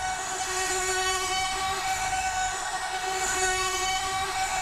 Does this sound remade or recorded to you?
remade